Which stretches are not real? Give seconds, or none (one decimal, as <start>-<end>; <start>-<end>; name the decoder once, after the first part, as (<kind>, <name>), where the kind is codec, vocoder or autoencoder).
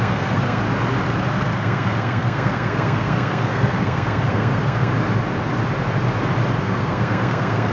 0.0-0.6 (codec, SNAC); 1.3-4.9; 6.6-7.7